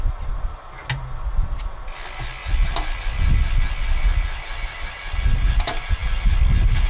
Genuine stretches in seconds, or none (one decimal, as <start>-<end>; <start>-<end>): 0.0-6.9